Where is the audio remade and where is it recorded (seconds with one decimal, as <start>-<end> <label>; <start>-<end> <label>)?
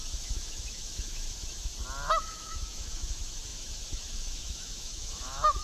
0.0-1.7 remade; 1.7-2.2 recorded; 2.2-5.6 remade